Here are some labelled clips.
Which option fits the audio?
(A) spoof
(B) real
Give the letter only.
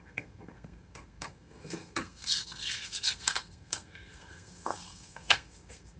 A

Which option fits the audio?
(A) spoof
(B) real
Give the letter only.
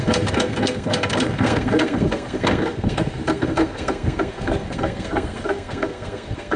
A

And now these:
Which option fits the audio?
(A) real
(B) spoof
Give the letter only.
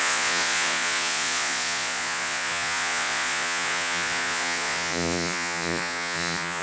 B